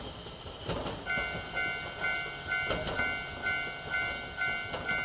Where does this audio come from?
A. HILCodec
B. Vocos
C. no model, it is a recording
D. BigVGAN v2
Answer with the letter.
C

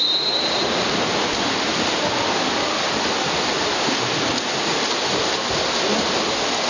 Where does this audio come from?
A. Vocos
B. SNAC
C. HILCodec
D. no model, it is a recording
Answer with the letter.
D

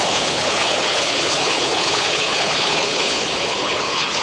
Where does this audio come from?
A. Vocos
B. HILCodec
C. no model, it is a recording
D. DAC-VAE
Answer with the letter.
B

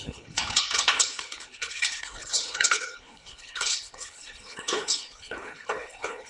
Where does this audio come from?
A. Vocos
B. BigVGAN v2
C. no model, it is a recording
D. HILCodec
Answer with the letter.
D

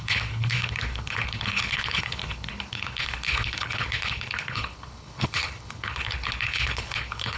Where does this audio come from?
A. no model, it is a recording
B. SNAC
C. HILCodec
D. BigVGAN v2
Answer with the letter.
C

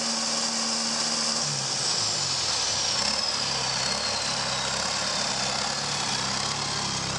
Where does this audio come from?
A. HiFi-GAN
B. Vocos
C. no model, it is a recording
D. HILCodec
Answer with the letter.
C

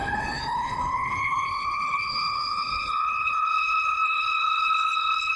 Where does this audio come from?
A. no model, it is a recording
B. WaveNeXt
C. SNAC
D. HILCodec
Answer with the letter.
D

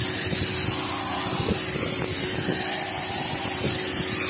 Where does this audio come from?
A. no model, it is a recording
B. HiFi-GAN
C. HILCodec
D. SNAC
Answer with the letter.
A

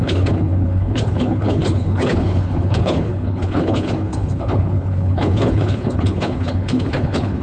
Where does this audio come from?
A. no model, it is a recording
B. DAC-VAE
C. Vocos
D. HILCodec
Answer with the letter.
D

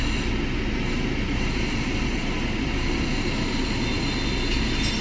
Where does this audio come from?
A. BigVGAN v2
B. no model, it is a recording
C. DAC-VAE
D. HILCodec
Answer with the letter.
B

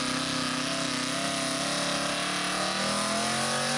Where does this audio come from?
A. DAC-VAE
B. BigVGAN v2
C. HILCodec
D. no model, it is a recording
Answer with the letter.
D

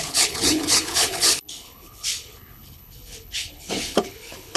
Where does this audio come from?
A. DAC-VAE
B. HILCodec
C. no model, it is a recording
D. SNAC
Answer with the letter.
B